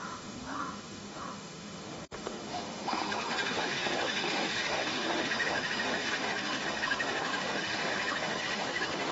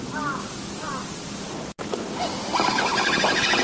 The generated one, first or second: first